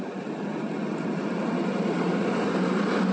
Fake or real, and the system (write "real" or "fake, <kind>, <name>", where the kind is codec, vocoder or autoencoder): real